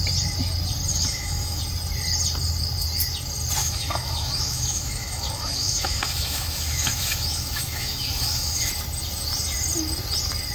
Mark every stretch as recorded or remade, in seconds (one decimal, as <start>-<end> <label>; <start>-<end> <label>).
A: 0.0-0.9 recorded; 0.9-1.6 remade; 1.6-3.6 recorded; 3.6-8.7 remade; 8.7-10.5 recorded